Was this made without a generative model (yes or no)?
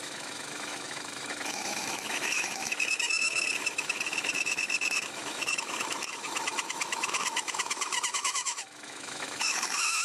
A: no